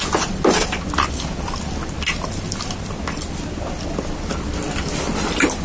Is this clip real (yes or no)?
yes